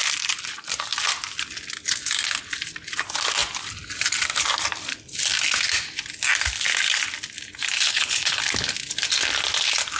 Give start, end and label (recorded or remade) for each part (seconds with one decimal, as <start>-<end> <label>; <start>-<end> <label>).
0.0-7.9 recorded; 7.9-8.4 remade; 8.4-10.0 recorded